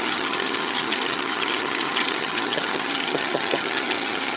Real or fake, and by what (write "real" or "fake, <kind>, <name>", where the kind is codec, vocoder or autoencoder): fake, vocoder, HiFi-GAN